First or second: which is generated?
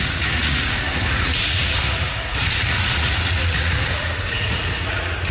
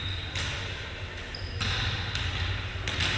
first